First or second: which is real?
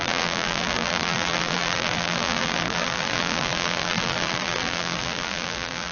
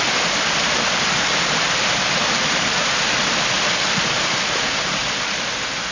second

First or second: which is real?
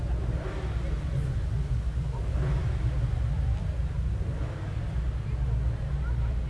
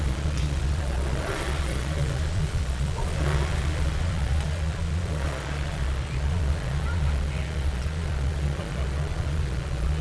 first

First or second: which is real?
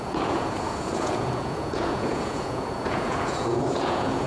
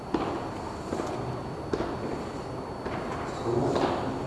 second